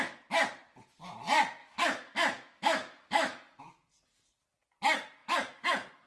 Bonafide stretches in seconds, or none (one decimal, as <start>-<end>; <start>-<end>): 0.0-1.6; 3.6-6.1